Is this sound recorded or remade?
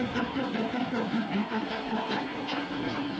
remade